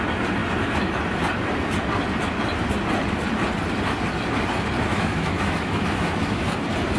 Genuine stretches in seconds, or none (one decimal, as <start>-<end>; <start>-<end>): 0.0-4.9; 6.5-7.0